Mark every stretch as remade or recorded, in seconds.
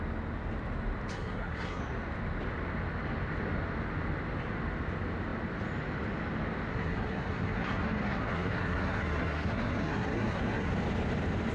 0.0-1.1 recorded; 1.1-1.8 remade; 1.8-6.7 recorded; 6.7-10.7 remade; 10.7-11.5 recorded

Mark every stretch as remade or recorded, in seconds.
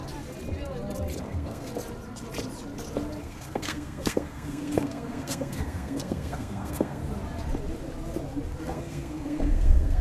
0.0-1.2 recorded; 1.2-1.7 remade; 1.7-3.2 recorded; 3.2-7.0 remade; 7.0-8.6 recorded; 8.6-10.0 remade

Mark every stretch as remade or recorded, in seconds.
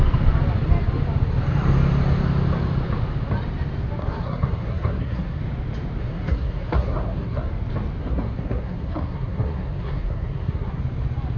0.0-4.0 recorded; 4.0-5.4 remade; 5.4-6.0 recorded; 6.0-7.5 remade; 7.5-8.0 recorded; 8.0-10.8 remade; 10.8-11.4 recorded